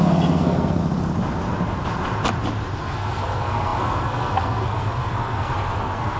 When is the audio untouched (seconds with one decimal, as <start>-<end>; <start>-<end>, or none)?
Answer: 0.8-2.8